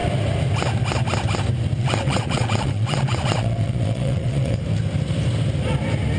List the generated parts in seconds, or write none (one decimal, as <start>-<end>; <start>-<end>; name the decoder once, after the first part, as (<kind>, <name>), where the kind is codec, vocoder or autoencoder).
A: 1.8-4.6 (vocoder, WaveNeXt)